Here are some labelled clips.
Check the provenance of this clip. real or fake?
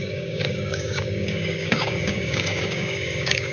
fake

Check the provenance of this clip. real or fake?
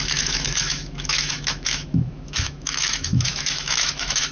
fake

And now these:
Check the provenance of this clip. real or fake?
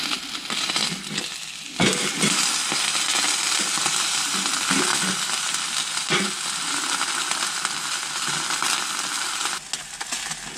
real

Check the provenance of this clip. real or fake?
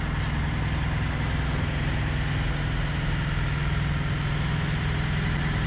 real